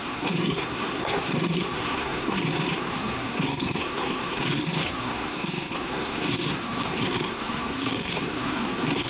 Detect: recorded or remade remade